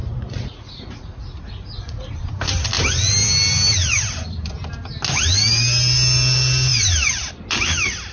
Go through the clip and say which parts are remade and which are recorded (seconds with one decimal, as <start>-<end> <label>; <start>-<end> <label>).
0.0-2.1 remade; 2.1-8.1 recorded

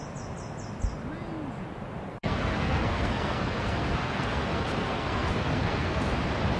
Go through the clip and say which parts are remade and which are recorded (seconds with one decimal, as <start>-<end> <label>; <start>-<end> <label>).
0.0-2.1 recorded; 2.1-6.1 remade; 6.1-6.6 recorded

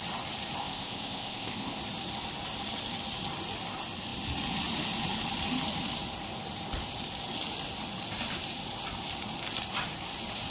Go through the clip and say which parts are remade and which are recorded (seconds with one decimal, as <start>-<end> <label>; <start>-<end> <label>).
0.0-0.6 recorded; 0.6-1.8 remade; 1.8-10.5 recorded

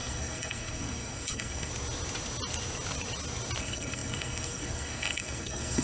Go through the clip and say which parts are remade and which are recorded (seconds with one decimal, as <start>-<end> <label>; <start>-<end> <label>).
0.0-1.7 remade; 1.7-3.6 recorded; 3.6-5.8 remade

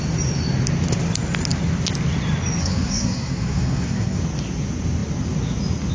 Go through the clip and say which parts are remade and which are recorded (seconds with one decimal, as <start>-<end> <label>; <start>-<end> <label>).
0.0-2.6 recorded; 2.6-4.2 remade; 4.2-5.9 recorded

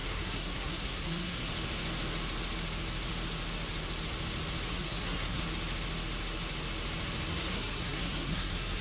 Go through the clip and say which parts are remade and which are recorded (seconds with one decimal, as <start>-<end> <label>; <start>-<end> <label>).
0.0-1.5 remade; 1.5-4.7 recorded; 4.7-5.4 remade; 5.4-7.3 recorded; 7.3-8.8 remade